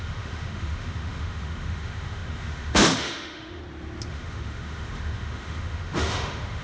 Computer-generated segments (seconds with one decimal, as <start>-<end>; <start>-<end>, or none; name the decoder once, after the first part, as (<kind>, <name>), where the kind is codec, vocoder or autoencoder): 0.0-3.6 (autoencoder, DAC-VAE); 4.1-6.6